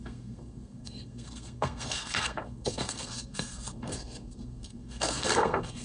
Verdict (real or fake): fake